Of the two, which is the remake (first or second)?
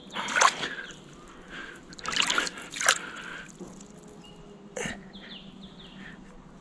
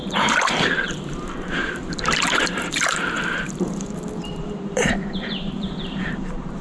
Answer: second